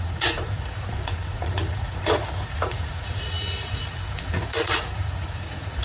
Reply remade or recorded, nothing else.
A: remade